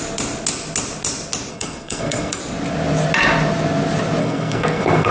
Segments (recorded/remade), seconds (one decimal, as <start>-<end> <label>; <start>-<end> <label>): 0.0-1.5 recorded; 1.5-2.4 remade; 2.4-4.2 recorded; 4.2-5.1 remade

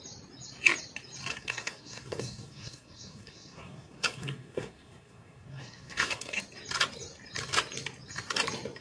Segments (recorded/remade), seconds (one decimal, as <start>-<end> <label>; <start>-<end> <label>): 0.0-1.3 recorded; 1.3-6.4 remade; 6.4-8.8 recorded

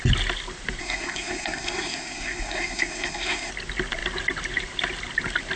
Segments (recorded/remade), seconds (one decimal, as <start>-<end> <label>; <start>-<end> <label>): 0.0-0.8 recorded; 0.8-3.5 remade; 3.5-5.6 recorded

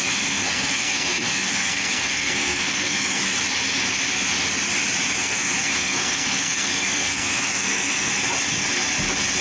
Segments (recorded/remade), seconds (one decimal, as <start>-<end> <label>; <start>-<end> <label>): 0.0-3.2 remade; 3.2-5.2 recorded; 5.2-8.1 remade; 8.1-9.4 recorded